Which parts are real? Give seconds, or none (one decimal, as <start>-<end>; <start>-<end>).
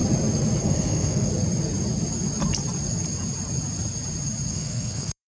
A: 0.0-0.6; 1.3-4.5